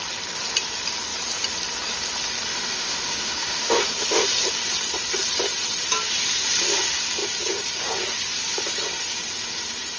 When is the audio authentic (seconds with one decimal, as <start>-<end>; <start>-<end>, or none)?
0.0-2.5; 3.8-10.0